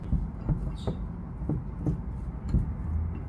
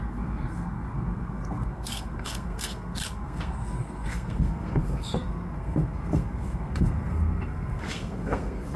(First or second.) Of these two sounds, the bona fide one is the first